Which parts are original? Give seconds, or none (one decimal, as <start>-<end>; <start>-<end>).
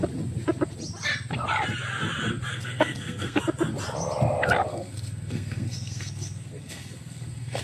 0.0-2.5; 3.4-4.7